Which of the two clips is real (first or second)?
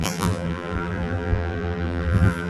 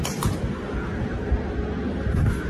second